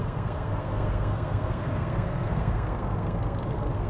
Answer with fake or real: fake